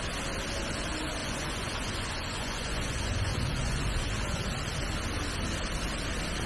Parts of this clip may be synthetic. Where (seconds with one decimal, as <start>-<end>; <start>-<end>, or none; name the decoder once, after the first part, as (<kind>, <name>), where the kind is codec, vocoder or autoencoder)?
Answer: 1.2-4.4 (vocoder, Vocos)